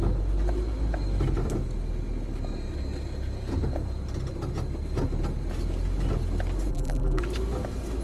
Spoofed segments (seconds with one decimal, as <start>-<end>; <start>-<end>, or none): 6.7-7.2